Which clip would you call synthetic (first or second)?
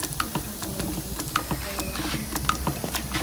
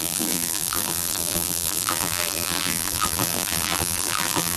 second